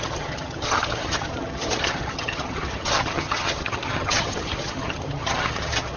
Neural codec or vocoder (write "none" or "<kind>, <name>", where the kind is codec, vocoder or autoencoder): vocoder, HiFi-GAN